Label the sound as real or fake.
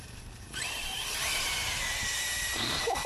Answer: fake